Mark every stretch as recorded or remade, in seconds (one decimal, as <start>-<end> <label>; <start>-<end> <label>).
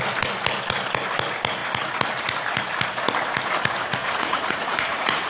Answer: 0.0-4.0 recorded; 4.0-5.3 remade